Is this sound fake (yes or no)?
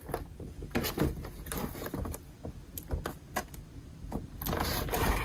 no